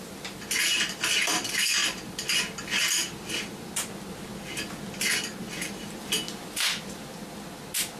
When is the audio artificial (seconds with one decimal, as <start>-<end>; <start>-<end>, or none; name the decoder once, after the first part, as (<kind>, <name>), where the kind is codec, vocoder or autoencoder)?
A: none